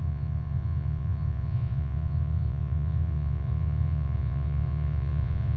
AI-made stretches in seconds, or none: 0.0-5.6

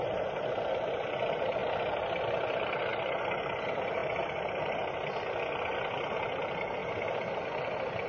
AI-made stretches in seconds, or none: none

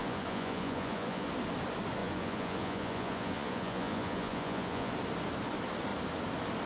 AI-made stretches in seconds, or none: 0.0-1.3; 2.0-4.9